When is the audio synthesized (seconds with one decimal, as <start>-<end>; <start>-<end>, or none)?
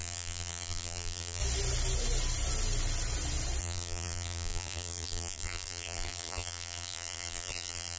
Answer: 0.0-1.4; 3.6-8.0